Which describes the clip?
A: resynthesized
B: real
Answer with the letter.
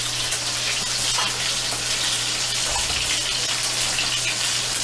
B